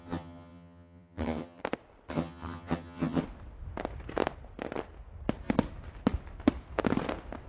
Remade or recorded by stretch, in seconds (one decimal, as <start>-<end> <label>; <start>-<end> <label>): 0.0-1.6 remade; 1.6-2.1 recorded; 2.1-3.2 remade; 3.2-7.5 recorded